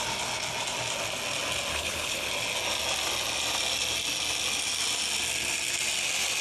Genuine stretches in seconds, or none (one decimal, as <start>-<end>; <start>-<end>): 0.0-1.7; 2.3-6.4